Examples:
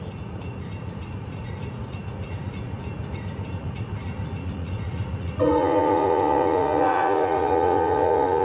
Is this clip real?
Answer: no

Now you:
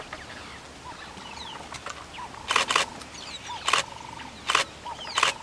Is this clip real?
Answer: yes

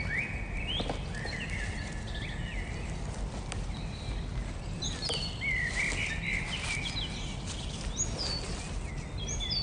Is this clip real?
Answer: yes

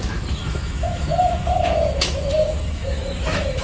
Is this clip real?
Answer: no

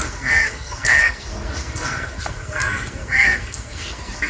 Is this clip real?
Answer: no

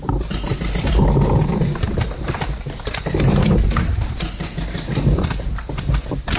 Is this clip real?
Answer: no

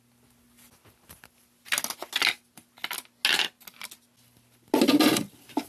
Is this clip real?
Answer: yes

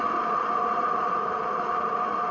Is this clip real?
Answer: yes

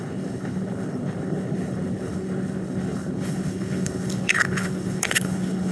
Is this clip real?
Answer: no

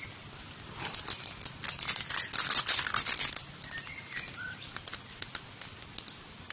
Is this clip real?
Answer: yes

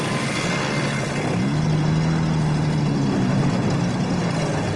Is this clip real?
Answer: yes